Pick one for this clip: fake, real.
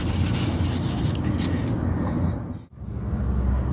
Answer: real